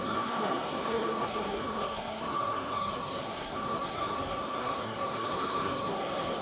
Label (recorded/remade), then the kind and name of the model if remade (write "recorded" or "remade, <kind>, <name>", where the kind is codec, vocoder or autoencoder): remade, codec, SNAC